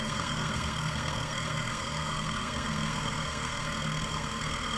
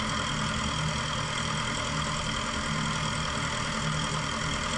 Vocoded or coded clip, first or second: first